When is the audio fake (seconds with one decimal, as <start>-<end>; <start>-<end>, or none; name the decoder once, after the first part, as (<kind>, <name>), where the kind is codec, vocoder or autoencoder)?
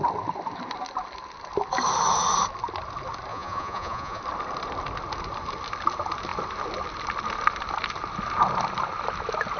3.3-4.2 (vocoder, Vocos)